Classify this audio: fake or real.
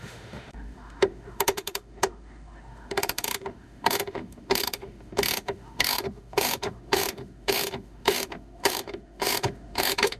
fake